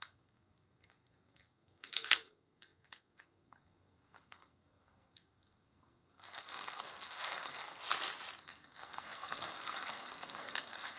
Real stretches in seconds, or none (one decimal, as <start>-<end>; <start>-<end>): 7.8-8.4